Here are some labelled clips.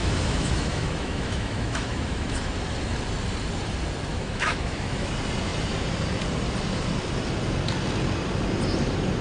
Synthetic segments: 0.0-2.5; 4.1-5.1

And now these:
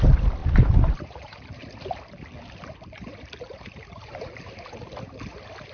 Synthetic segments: 0.4-1.6; 3.7-4.3

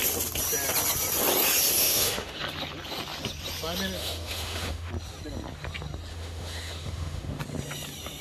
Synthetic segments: 1.8-2.4; 4.0-4.9; 6.1-7.4

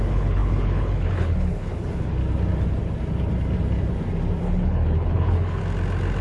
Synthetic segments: 0.0-2.2; 4.4-5.6

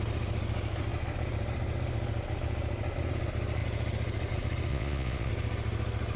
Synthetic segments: 4.7-5.3